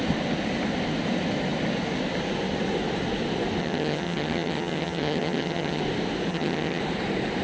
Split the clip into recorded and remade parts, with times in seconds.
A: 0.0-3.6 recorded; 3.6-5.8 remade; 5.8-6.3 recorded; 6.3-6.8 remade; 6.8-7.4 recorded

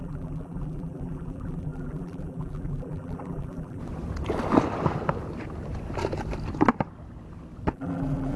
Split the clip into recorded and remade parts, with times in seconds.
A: 0.0-3.8 remade; 3.8-7.7 recorded; 7.7-8.4 remade

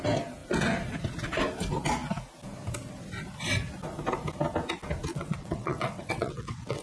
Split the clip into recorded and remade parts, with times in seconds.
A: 0.0-5.1 recorded; 5.1-6.8 remade

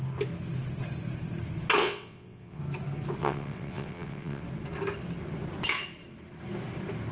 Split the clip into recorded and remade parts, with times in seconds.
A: 0.0-1.8 recorded; 1.8-2.6 remade; 2.6-3.2 recorded; 3.2-4.4 remade; 4.4-7.1 recorded

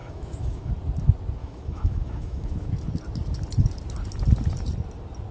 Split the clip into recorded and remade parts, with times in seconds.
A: 0.0-0.7 remade; 0.7-1.4 recorded; 1.4-2.7 remade; 2.7-5.3 recorded

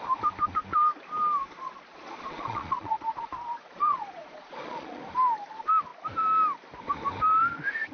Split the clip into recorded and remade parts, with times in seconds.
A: 0.0-1.4 recorded; 1.4-5.0 remade; 5.0-7.9 recorded

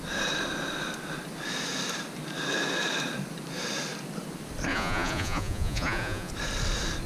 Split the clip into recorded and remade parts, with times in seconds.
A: 0.0-4.7 recorded; 4.7-6.3 remade; 6.3-7.1 recorded